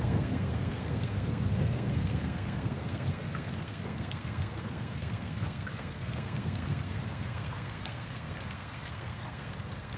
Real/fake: fake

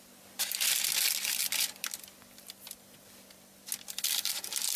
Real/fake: real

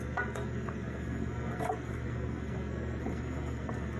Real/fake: fake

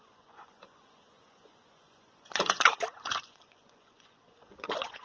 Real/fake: fake